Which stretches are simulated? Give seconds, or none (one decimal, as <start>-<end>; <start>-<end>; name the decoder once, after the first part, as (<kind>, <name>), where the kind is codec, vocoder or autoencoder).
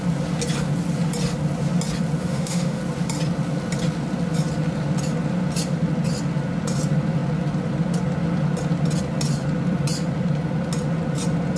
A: 2.2-2.8 (autoencoder, DAC-VAE)